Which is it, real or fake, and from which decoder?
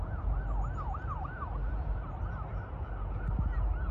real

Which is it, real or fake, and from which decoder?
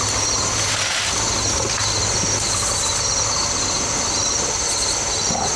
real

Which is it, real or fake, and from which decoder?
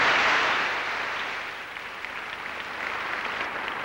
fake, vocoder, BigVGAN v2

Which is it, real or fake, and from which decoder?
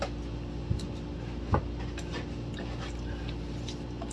real